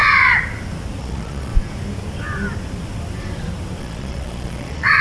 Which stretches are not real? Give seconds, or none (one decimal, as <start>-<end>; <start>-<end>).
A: 1.0-1.5; 3.8-5.0